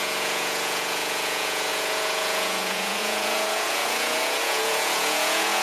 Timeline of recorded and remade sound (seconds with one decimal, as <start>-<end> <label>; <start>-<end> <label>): 0.0-5.6 remade